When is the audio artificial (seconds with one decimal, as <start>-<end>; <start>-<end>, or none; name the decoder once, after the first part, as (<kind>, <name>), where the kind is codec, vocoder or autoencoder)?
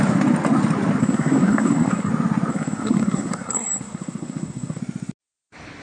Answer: 1.0-2.1 (codec, SNAC); 2.5-4.8